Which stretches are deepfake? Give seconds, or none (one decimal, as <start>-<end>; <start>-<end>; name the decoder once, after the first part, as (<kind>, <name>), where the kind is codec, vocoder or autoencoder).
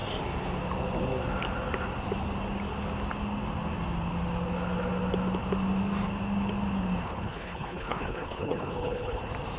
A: 7.0-9.2 (codec, HILCodec)